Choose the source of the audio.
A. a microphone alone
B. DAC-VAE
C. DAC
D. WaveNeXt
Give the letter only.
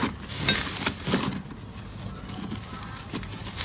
A